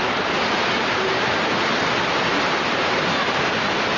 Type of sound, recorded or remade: recorded